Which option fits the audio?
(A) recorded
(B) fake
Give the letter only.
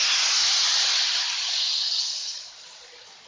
A